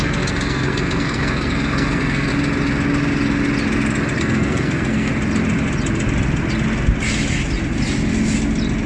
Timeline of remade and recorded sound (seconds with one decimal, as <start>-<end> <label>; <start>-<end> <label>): 0.0-2.3 remade; 2.3-4.2 recorded; 4.2-5.1 remade; 5.1-8.9 recorded